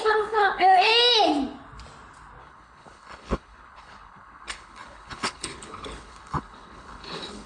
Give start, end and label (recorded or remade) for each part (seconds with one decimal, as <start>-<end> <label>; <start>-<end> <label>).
0.0-0.9 remade; 0.9-2.4 recorded; 2.4-7.5 remade